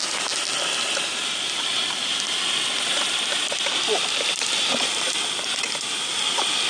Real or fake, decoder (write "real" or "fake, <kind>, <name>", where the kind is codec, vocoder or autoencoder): real